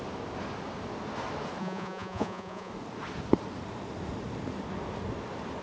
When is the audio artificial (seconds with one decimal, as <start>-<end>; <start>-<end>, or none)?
1.6-2.7